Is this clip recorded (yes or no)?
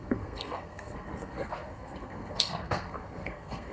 no